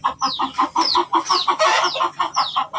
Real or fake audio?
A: real